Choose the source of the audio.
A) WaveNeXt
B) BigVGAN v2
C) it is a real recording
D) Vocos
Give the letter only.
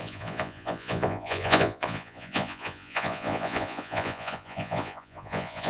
D